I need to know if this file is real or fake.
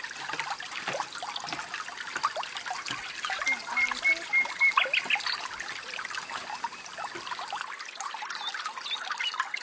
real